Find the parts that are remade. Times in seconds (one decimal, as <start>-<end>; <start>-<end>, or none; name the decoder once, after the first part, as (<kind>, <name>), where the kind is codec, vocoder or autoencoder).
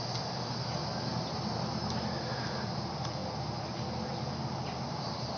none